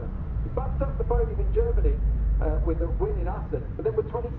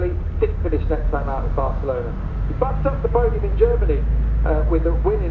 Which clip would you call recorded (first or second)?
second